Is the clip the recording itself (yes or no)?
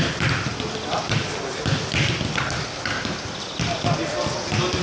yes